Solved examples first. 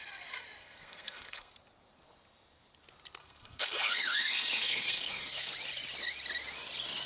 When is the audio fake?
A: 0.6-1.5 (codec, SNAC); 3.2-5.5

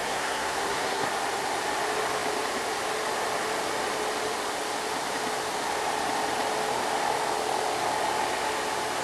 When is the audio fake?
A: 0.0-1.1 (codec, SNAC)

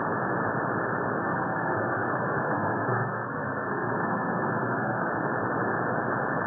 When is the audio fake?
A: 1.2-5.1 (codec, SNAC)